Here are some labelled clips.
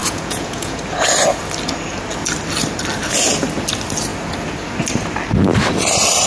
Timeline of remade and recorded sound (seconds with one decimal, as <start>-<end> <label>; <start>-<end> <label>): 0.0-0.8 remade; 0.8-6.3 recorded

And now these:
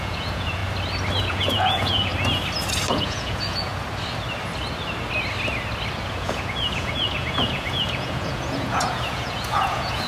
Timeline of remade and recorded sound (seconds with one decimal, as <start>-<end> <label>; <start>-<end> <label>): 0.0-0.6 remade; 0.6-1.2 recorded; 1.2-2.1 remade; 2.1-2.9 recorded; 2.9-3.7 remade; 3.7-6.1 recorded; 6.1-10.1 remade

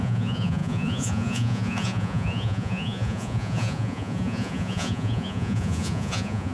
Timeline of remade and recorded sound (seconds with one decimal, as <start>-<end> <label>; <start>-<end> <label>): 0.0-6.5 remade

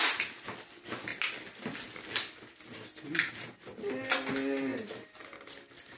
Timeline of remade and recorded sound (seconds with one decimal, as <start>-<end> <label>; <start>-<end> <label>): 0.0-6.0 recorded

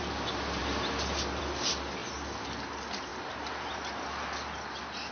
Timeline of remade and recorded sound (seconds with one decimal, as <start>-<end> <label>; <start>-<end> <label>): 0.0-5.1 recorded